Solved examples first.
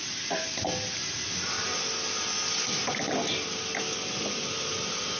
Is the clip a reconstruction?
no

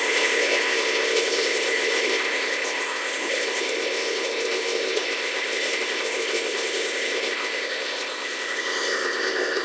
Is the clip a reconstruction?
yes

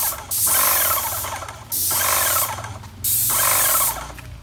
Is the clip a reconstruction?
no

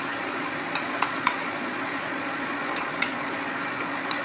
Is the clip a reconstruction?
yes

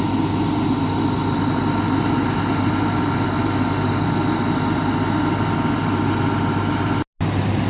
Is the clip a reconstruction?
no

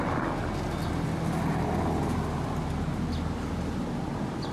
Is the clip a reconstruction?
no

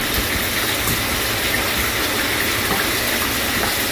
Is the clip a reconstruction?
no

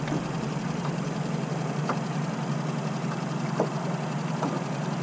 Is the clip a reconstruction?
no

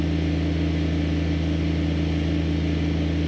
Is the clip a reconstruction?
no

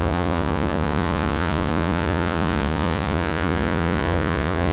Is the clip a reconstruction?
yes